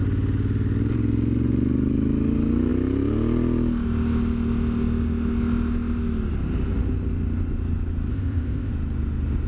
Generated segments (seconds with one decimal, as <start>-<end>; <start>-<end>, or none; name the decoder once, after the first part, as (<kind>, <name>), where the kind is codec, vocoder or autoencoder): 8.1-8.7 (codec, ZipCodec)